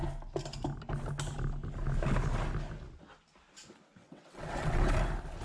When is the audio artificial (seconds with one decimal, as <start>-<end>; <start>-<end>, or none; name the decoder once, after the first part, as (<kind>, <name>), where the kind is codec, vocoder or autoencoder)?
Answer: 4.0-4.9 (vocoder, WaveNeXt)